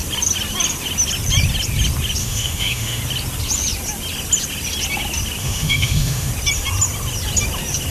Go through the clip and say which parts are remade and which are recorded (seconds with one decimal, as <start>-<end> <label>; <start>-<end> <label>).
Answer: 0.0-2.2 recorded; 2.2-3.0 remade; 3.0-5.4 recorded; 5.4-6.3 remade; 6.3-7.9 recorded